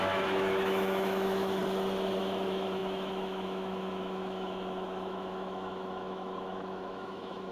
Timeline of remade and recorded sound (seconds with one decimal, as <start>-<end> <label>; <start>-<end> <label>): 0.0-1.6 remade; 1.6-2.2 recorded; 2.2-7.5 remade